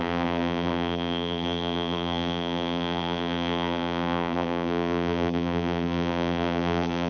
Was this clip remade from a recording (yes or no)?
yes